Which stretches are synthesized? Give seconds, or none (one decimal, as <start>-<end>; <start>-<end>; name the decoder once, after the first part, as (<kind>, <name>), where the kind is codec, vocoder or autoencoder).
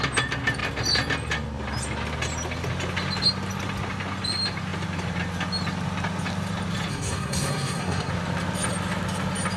6.9-8.1 (codec, SNAC)